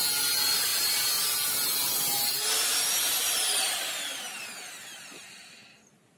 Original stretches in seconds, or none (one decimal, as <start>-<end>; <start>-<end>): 0.0-6.2